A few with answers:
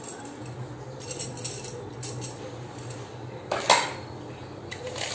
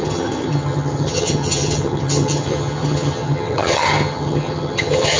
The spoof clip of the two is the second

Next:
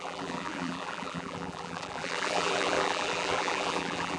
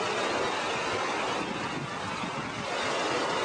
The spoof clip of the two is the first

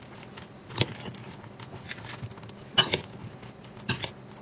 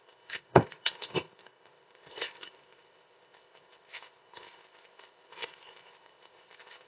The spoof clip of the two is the second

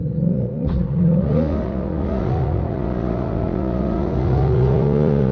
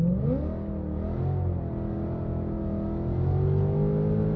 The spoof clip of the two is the first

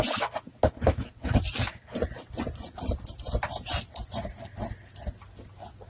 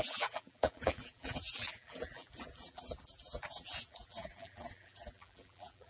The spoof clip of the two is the second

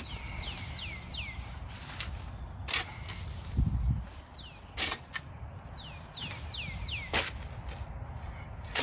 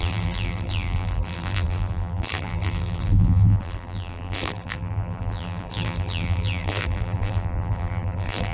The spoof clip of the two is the second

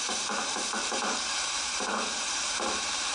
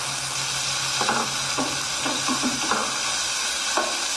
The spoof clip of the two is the first